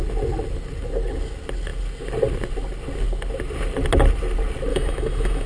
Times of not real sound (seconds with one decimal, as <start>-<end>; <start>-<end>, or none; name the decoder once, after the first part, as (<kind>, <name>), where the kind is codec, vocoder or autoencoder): 4.7-5.5 (autoencoder, DAC-VAE)